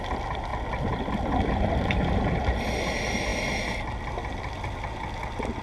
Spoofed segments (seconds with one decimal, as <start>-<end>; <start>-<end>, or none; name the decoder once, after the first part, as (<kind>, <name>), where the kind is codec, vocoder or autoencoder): none